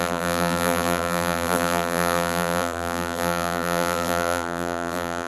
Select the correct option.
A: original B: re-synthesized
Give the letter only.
B